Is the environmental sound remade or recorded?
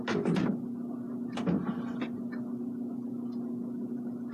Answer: recorded